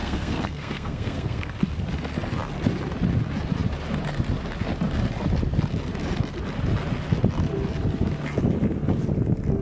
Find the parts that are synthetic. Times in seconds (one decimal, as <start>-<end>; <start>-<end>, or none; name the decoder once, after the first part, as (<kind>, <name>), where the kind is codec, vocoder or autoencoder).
0.0-1.5 (codec, SNAC)